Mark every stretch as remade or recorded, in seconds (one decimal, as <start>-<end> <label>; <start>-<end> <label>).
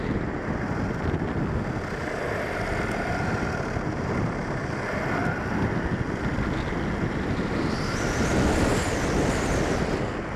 0.0-10.4 recorded